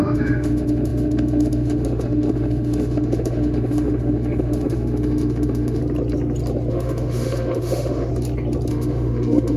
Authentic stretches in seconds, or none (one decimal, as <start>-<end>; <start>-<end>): 5.8-6.7; 8.1-8.7